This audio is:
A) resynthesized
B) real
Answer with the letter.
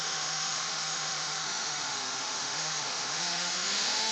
A